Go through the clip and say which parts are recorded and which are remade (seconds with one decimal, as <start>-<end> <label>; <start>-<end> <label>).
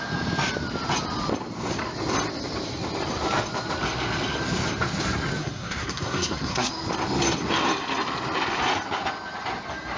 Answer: 0.0-5.4 recorded; 5.4-6.7 remade; 6.7-10.0 recorded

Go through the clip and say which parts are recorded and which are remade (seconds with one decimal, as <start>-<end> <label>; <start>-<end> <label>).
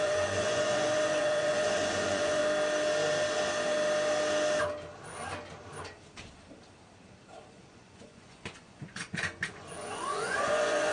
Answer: 0.0-2.4 remade; 2.4-7.5 recorded; 7.5-10.9 remade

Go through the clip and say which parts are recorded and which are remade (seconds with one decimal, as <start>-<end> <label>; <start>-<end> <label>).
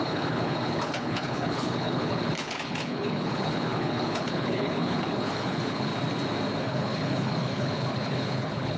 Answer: 0.0-5.9 remade; 5.9-6.6 recorded; 6.6-8.8 remade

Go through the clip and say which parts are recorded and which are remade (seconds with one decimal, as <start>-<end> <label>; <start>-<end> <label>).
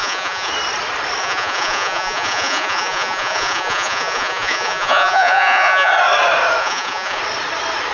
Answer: 0.0-0.5 remade; 0.5-1.2 recorded; 1.2-5.9 remade; 5.9-6.6 recorded; 6.6-7.2 remade; 7.2-7.9 recorded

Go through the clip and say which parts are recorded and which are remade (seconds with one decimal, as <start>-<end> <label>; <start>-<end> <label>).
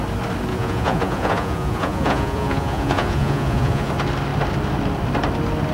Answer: 0.0-0.5 recorded; 0.5-3.9 remade; 3.9-5.7 recorded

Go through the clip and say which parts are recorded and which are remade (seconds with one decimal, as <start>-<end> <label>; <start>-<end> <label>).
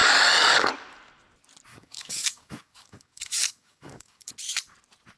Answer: 0.0-0.7 remade; 0.7-1.7 recorded; 1.7-4.3 remade; 4.3-5.2 recorded